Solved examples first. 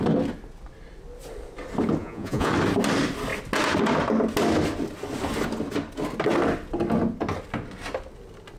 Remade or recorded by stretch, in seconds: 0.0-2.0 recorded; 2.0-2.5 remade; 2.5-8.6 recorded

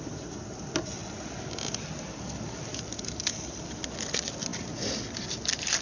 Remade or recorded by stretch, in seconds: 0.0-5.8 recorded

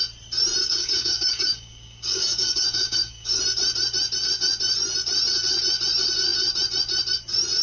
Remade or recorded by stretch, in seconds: 0.0-0.6 recorded; 0.6-3.4 remade; 3.4-7.6 recorded

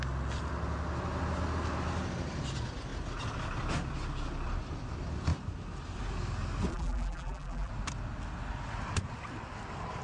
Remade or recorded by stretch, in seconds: 0.0-6.7 recorded; 6.7-7.7 remade; 7.7-10.0 recorded

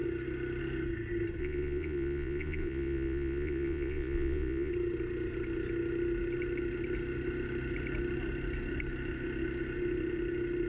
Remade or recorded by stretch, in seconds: 0.0-1.4 recorded; 1.4-4.7 remade; 4.7-10.7 recorded

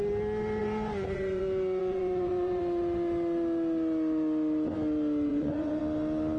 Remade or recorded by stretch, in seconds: 0.0-0.6 recorded; 0.6-1.4 remade; 1.4-1.8 recorded; 1.8-2.6 remade; 2.6-5.3 recorded; 5.3-5.8 remade; 5.8-6.4 recorded

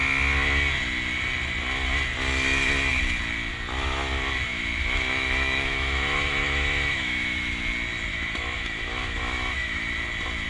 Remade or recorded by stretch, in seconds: 0.0-4.5 recorded; 4.5-7.6 remade; 7.6-8.1 recorded; 8.1-9.9 remade; 9.9-10.5 recorded